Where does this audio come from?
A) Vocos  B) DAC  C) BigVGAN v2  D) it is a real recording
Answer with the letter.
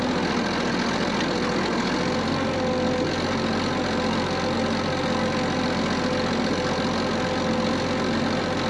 D